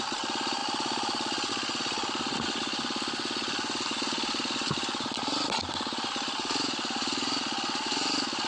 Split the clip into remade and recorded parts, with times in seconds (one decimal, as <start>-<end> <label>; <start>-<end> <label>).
0.0-8.5 recorded